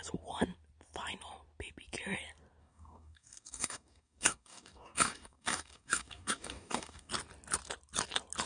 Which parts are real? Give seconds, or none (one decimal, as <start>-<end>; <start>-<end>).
0.0-2.6; 7.1-8.5